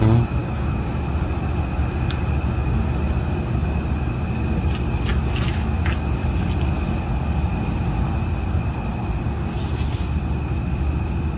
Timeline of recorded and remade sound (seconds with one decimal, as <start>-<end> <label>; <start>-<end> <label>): 0.0-0.4 recorded; 0.4-0.9 remade; 0.9-11.4 recorded